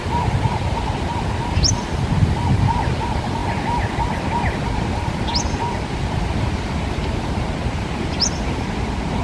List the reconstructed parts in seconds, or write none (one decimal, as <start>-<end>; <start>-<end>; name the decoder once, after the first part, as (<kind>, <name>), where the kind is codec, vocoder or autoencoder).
none